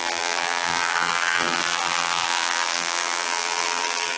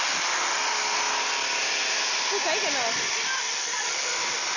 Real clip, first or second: second